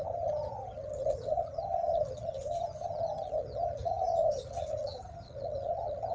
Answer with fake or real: fake